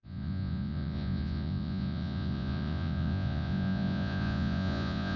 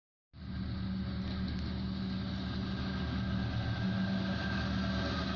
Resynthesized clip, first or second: first